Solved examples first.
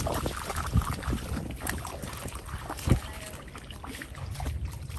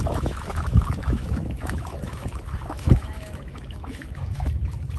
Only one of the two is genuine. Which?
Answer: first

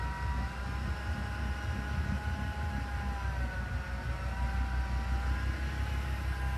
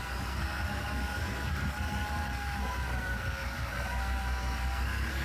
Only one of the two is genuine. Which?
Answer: first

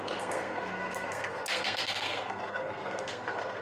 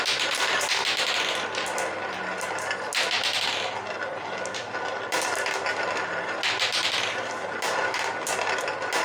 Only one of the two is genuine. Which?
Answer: second